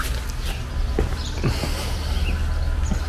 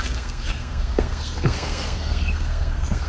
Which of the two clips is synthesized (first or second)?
second